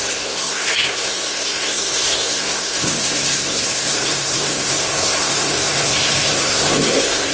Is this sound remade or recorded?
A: remade